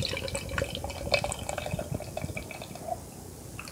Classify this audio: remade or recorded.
recorded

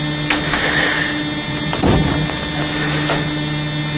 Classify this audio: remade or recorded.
recorded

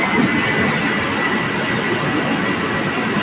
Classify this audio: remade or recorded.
recorded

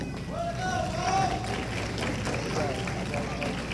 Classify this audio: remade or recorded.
recorded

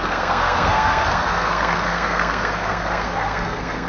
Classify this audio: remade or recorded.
remade